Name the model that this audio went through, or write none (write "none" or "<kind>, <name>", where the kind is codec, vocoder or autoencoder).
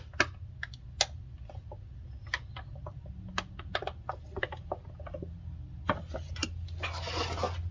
none